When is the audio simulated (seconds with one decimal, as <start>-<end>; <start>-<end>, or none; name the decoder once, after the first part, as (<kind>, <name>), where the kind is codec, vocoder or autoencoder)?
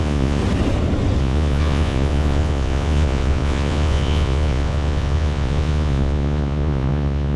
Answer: 0.0-0.4 (vocoder, Vocos); 1.2-7.4